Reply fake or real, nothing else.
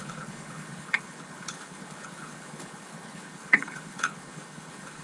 fake